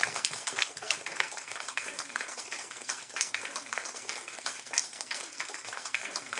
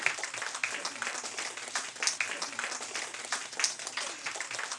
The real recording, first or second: second